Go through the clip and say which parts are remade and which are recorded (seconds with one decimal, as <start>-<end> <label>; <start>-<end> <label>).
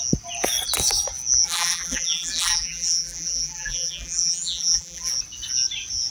0.0-1.4 recorded; 1.4-5.1 remade; 5.1-6.1 recorded